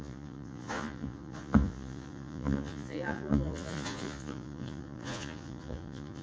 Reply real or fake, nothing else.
fake